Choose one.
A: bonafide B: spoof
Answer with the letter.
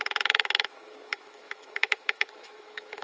B